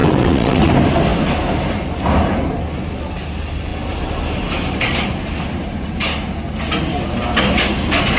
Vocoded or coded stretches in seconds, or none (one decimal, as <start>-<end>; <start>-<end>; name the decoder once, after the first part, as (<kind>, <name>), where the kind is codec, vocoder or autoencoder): 0.0-0.7 (vocoder, WaveNeXt)